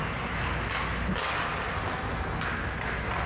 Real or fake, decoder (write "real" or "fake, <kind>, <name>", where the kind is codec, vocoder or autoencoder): real